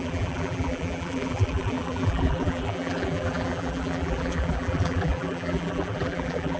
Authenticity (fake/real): fake